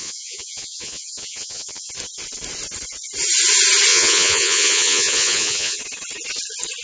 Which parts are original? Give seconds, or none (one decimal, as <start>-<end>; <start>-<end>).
1.9-3.9; 5.8-6.8